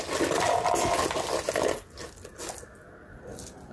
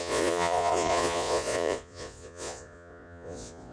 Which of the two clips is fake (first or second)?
second